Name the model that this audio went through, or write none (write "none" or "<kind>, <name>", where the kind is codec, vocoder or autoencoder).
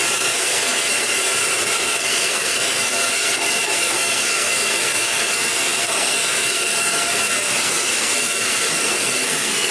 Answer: codec, SNAC